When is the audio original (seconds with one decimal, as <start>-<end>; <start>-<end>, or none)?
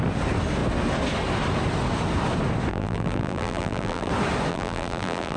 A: 0.0-2.7; 4.1-4.5